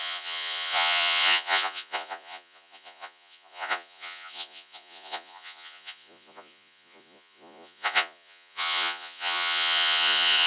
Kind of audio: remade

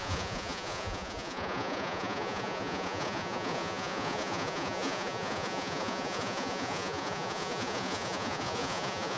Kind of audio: remade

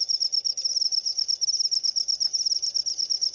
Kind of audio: recorded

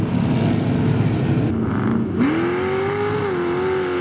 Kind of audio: recorded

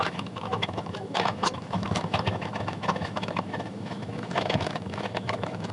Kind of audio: remade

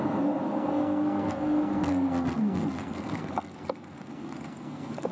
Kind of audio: remade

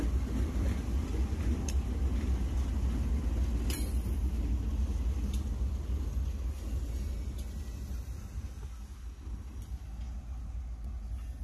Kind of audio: recorded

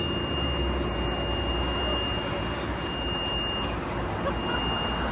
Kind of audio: recorded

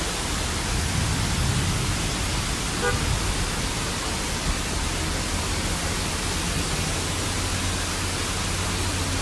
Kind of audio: recorded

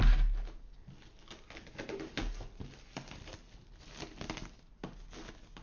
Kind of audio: recorded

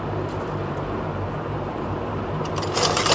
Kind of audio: remade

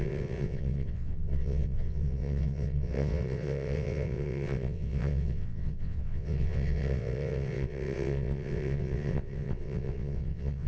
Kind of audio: remade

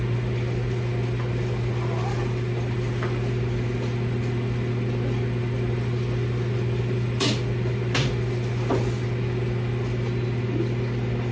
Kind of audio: recorded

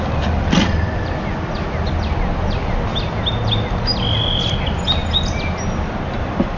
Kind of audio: recorded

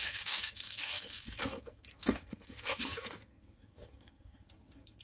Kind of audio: remade